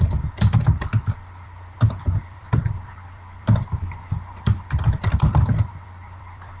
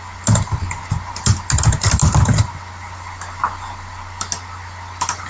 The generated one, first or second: first